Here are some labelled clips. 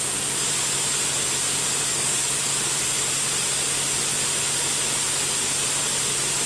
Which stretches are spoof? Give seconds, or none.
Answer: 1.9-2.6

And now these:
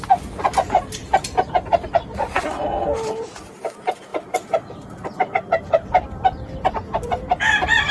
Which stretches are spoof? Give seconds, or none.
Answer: 4.1-6.7